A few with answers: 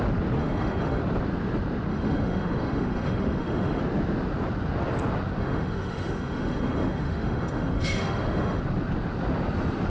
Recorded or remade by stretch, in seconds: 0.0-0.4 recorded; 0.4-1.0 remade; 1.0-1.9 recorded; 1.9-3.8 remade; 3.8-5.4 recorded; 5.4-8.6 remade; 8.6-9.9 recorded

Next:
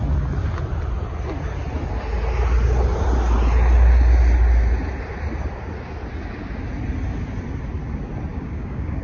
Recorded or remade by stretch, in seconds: 0.0-8.3 recorded; 8.3-9.0 remade

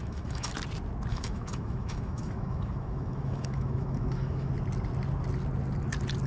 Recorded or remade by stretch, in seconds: 0.0-0.5 remade; 0.5-1.1 recorded; 1.1-4.5 remade; 4.5-6.3 recorded

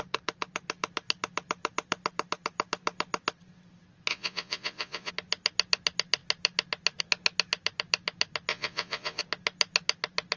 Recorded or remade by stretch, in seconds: 0.0-4.1 recorded; 4.1-5.1 remade; 5.1-8.5 recorded; 8.5-9.2 remade; 9.2-10.4 recorded

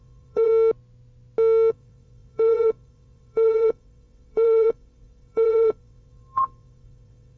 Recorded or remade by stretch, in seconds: 0.0-0.5 remade; 0.5-1.7 recorded; 1.7-7.4 remade